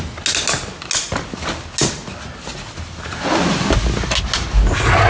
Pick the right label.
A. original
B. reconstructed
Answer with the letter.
A